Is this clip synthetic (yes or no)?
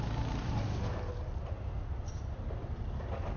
no